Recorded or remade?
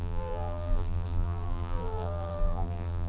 remade